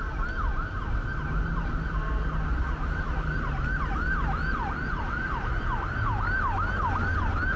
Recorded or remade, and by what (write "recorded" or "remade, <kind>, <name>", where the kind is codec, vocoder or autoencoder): recorded